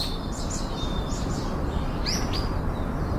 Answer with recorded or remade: recorded